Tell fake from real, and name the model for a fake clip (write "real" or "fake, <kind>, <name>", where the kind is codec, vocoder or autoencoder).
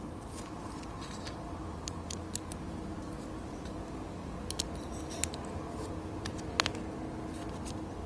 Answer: real